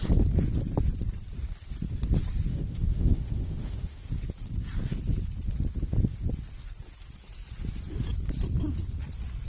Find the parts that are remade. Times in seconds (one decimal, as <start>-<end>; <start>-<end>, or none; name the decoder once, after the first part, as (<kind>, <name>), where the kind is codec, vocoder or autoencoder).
2.5-4.1 (autoencoder, DAC-VAE)